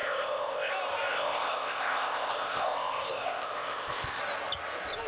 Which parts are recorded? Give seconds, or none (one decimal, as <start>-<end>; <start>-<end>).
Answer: 0.7-1.1; 4.2-5.1